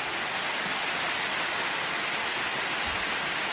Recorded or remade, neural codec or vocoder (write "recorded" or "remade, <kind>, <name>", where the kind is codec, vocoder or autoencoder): recorded